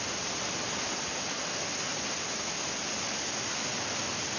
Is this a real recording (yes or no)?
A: yes